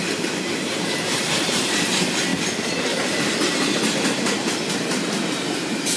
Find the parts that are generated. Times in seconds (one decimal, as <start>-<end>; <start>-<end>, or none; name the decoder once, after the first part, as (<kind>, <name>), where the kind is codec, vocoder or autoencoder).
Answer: 0.0-2.3 (vocoder, BigVGAN v2); 5.3-6.0